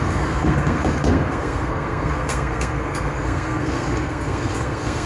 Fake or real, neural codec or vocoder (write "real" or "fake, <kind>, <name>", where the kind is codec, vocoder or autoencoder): fake, codec, SNAC